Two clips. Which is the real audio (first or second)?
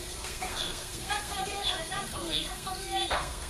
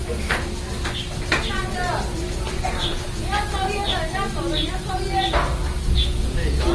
second